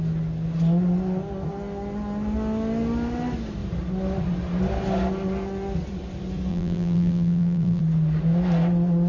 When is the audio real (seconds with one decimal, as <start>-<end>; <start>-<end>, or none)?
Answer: 0.0-6.5; 7.8-9.1